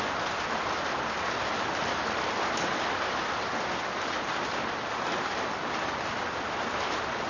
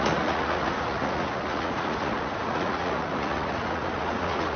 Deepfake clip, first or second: second